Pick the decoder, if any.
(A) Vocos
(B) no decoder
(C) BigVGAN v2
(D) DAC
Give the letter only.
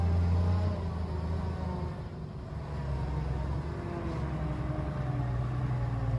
B